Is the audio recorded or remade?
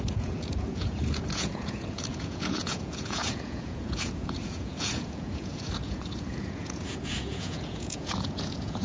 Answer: remade